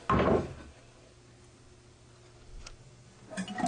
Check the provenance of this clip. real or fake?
real